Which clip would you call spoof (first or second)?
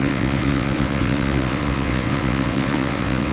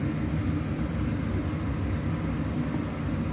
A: first